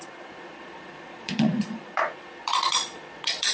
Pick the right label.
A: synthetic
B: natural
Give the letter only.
A